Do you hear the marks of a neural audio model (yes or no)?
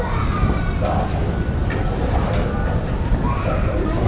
yes